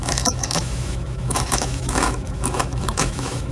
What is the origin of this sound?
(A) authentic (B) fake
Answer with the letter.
B